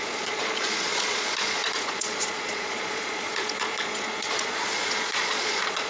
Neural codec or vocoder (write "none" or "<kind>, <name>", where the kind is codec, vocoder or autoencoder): vocoder, Vocos